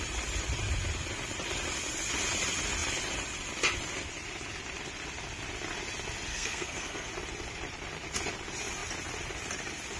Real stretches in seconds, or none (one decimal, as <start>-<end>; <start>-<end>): 0.0-6.3; 7.1-10.0